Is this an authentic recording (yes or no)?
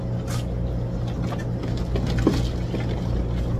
yes